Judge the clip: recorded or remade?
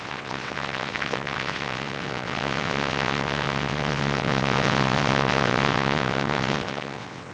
remade